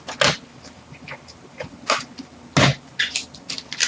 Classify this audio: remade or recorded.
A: recorded